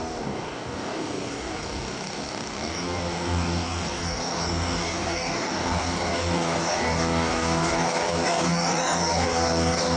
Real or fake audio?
fake